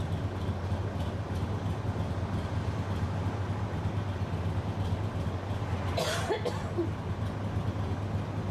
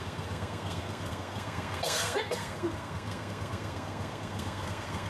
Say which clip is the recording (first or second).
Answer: first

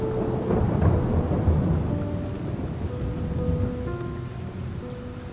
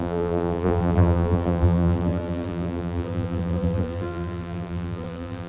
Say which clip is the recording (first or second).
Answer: first